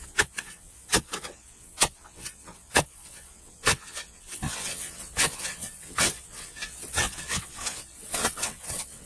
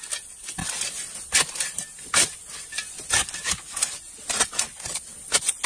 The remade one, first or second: first